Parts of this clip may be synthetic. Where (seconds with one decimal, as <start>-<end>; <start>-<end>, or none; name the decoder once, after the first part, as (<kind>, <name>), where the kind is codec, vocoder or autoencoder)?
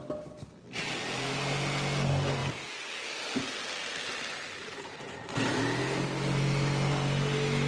none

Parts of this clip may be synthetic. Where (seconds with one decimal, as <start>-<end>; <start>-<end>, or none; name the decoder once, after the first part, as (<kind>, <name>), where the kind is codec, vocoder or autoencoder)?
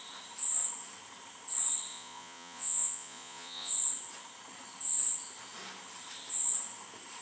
1.9-3.7 (vocoder, Vocos)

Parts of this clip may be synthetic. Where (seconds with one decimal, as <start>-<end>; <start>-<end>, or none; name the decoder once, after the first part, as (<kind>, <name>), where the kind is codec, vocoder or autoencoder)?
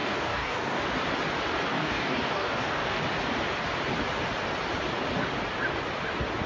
0.0-0.8 (codec, DAC); 1.7-3.0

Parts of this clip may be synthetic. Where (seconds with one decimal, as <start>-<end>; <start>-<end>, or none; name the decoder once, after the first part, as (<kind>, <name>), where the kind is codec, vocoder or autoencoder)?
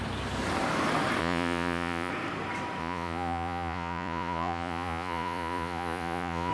1.2-2.1 (vocoder, Vocos); 2.8-6.5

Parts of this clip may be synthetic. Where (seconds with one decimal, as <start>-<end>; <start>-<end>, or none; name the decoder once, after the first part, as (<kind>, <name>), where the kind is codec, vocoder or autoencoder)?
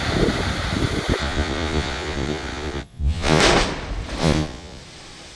1.2-3.4 (vocoder, Vocos); 4.2-4.8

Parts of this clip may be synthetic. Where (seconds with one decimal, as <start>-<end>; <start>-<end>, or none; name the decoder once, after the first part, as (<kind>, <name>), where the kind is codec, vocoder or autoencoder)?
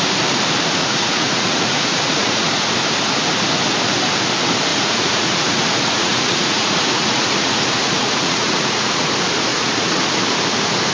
0.8-2.7 (vocoder, Vocos); 4.7-9.1; 9.5-10.0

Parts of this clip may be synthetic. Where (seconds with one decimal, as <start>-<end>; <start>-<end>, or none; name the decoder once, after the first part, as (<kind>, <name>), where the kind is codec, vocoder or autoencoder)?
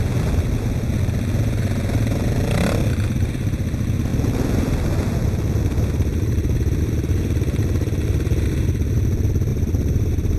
4.1-5.0 (vocoder, BigVGAN v2); 9.5-10.4